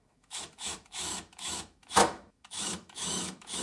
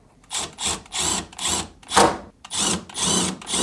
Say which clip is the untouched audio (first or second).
second